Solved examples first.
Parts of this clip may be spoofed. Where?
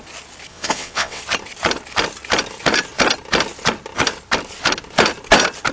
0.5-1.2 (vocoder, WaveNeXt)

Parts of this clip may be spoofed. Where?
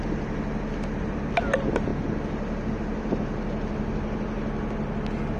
none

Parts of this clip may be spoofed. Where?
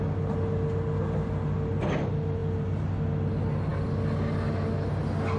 none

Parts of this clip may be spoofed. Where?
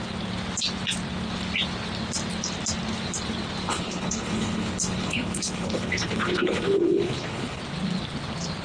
3.7-7.6 (codec, HILCodec)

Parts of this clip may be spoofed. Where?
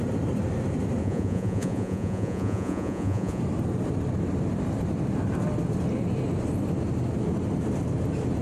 1.0-3.4 (vocoder, Vocos)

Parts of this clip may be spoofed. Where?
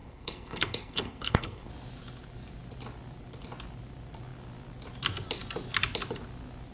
0.0-1.7 (codec, SNAC)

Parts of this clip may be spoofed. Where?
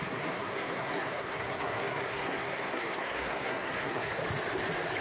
0.0-4.2 (codec, SNAC)